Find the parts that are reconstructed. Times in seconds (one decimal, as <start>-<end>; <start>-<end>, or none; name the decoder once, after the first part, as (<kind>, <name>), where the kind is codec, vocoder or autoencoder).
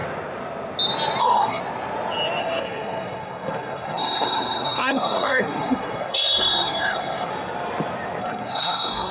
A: 1.2-1.6 (codec, SNAC); 2.4-7.3; 8.2-9.1